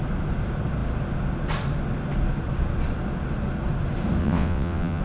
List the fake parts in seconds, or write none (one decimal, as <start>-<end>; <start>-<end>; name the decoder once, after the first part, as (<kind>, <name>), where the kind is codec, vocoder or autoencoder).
4.2-5.0 (vocoder, WaveNeXt)